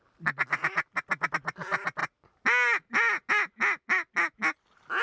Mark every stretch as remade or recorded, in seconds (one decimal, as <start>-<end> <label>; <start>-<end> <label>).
0.0-5.0 recorded